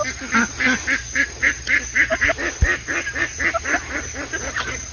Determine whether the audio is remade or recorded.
recorded